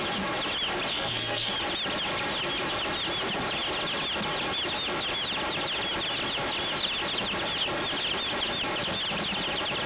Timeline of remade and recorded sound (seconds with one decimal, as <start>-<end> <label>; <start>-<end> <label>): 0.0-0.9 recorded; 0.9-1.5 remade; 1.5-9.9 recorded